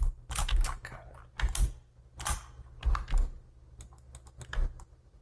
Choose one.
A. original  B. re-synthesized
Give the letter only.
A